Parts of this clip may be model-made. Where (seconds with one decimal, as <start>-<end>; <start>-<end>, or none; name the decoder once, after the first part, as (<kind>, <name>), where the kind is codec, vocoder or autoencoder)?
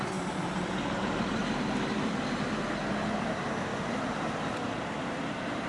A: 0.0-1.4 (vocoder, BigVGAN v2); 2.9-5.7